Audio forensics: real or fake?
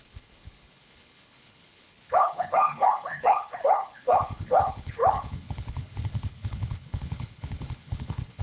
fake